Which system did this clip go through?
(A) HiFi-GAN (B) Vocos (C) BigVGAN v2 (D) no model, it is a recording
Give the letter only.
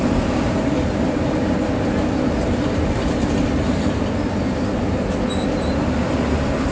D